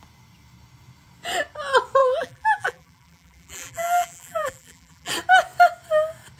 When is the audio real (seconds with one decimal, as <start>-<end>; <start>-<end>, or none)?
0.0-2.0; 5.1-6.4